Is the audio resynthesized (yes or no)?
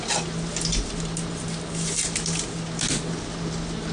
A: no